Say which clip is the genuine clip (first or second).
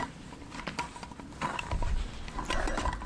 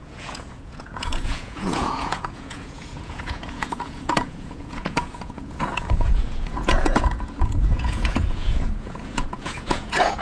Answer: first